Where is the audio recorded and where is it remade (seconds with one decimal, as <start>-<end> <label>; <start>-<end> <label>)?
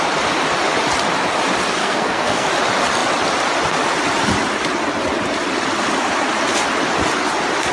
0.0-1.8 recorded; 1.8-2.5 remade; 2.5-7.7 recorded